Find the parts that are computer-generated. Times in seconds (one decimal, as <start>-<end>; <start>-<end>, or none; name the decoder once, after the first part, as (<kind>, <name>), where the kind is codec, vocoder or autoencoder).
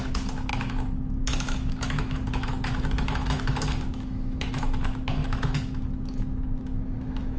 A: 0.0-7.4 (autoencoder, DAC-VAE)